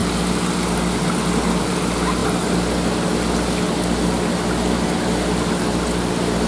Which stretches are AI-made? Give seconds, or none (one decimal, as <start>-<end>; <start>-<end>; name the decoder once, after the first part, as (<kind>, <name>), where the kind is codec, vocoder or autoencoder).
none